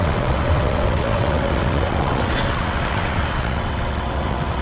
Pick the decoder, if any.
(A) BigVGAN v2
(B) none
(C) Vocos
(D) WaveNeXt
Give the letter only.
D